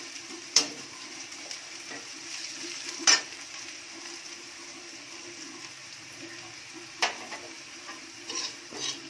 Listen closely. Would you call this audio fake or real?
fake